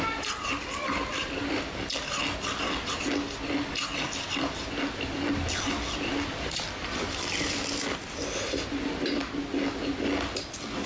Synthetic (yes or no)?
no